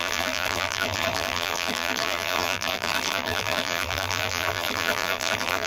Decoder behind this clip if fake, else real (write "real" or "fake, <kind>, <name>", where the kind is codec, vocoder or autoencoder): fake, vocoder, BigVGAN v2